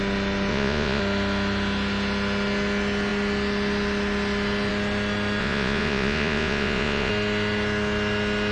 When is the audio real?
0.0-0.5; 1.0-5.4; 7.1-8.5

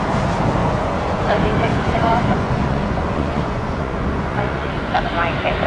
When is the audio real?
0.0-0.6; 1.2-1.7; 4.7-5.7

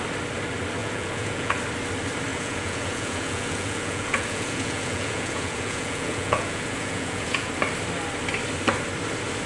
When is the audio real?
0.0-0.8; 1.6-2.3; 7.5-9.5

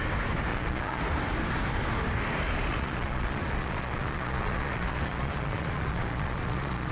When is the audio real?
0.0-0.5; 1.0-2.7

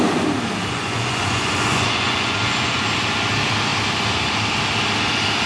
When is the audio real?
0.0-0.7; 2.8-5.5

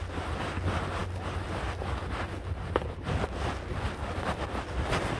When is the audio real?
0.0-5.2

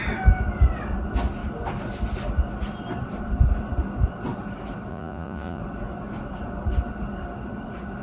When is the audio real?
0.0-4.9; 5.6-8.0